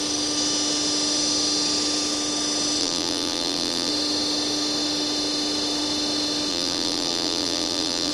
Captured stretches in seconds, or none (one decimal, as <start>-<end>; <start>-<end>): 0.0-2.8; 3.9-6.5